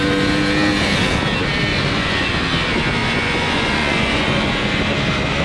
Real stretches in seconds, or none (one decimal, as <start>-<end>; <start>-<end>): 0.0-1.7; 2.3-3.0; 4.8-5.4